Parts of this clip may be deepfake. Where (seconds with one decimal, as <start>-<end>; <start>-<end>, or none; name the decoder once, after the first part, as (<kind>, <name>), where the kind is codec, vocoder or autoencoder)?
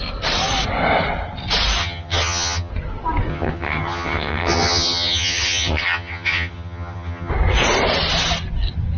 1.8-2.7 (vocoder, HiFi-GAN); 3.3-7.3